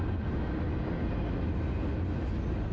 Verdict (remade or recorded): recorded